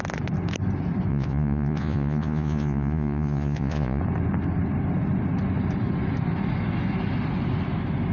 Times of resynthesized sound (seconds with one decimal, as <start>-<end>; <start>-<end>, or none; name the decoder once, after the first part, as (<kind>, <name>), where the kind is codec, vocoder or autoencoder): 1.1-4.0 (vocoder, Vocos)